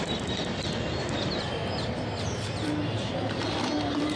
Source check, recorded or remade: recorded